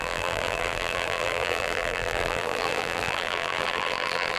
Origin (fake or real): fake